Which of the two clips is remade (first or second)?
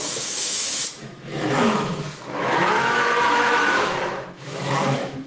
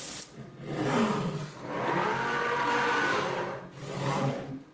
first